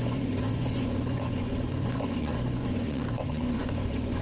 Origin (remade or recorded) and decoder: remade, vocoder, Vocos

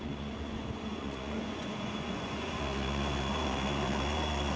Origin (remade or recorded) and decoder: remade, vocoder, Vocos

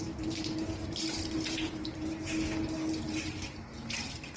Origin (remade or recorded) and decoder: recorded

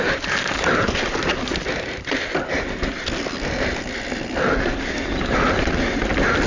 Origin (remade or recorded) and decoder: recorded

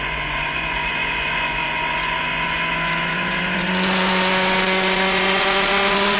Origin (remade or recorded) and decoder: remade, vocoder, Vocos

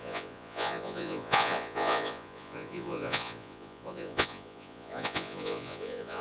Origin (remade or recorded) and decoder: remade, vocoder, Vocos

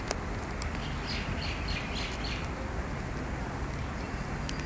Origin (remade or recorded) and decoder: recorded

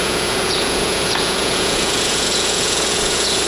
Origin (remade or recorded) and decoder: remade, vocoder, Vocos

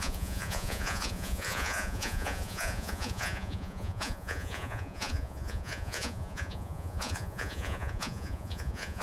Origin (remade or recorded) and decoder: remade, vocoder, Vocos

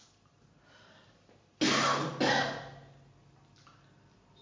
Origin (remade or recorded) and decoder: recorded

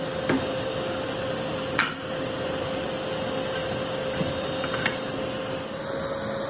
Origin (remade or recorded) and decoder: recorded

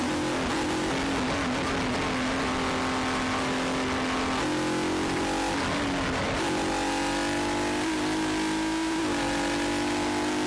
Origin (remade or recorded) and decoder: recorded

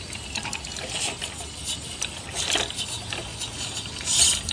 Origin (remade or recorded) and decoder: recorded